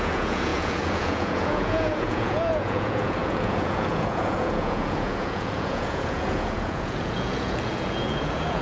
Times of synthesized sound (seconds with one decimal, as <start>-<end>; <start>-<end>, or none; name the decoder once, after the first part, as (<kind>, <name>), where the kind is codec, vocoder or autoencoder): 0.0-8.6 (vocoder, Vocos)